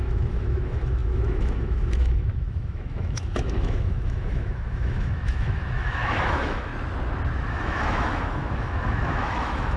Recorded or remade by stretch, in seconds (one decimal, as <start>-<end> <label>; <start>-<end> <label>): 0.0-6.7 remade; 6.7-7.5 recorded; 7.5-9.8 remade